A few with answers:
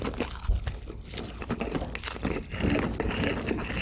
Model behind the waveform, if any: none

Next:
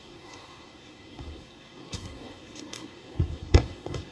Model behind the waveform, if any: codec, SNAC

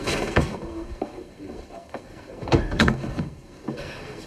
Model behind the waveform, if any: codec, SNAC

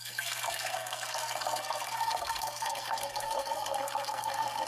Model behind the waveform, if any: codec, SNAC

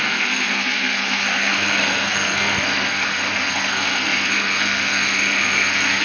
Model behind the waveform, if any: codec, SNAC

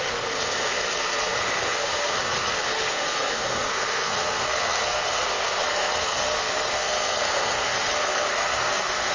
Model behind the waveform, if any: codec, SNAC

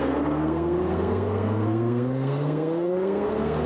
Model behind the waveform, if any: codec, SNAC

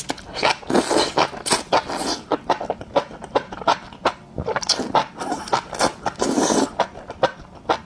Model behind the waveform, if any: none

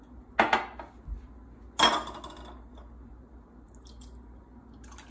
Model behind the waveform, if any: none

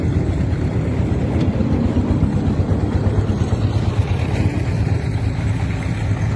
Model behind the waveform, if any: none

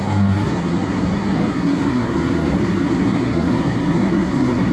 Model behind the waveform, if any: codec, SNAC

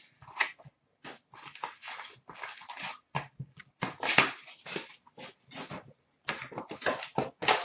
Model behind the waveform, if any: none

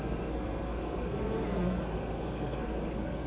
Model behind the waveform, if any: codec, SNAC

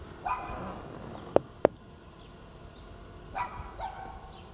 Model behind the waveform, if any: none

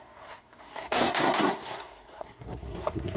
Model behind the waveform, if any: codec, SNAC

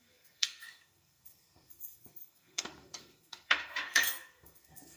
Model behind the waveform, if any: codec, SNAC